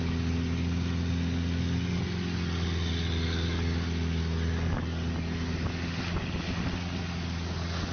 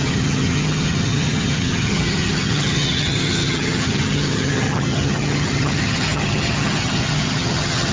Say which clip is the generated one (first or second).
second